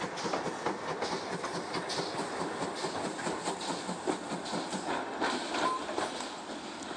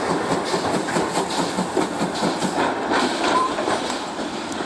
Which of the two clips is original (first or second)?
first